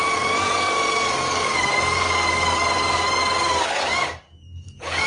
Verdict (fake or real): fake